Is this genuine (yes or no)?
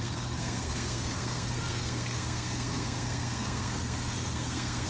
no